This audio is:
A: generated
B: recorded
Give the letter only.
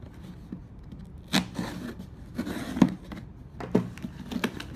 B